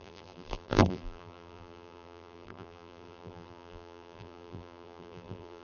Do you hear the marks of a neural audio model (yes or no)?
yes